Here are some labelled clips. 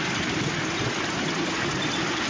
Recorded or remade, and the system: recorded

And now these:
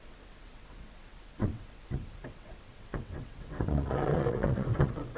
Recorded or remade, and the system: remade, vocoder, WaveNeXt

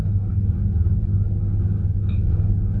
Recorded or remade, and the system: recorded